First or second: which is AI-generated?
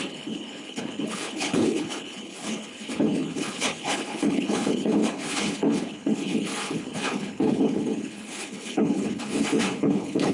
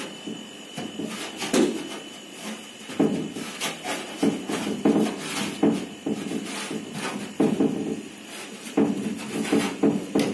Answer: first